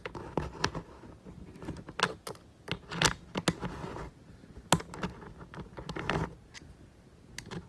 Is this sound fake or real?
real